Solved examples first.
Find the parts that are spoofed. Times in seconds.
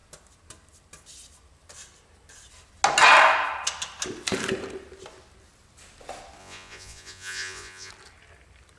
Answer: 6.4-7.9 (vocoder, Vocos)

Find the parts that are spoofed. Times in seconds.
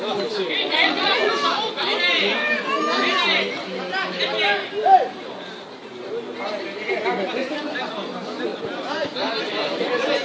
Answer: 0.6-1.3 (vocoder, Vocos)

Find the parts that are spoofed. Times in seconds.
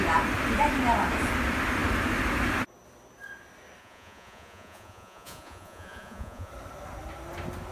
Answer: 3.8-6.5 (vocoder, Vocos)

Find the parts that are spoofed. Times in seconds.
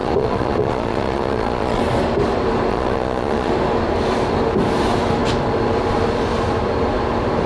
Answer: 0.0-1.8 (vocoder, Vocos); 2.7-3.5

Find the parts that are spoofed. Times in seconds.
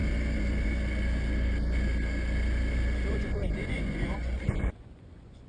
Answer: 3.1-5.5 (vocoder, Vocos)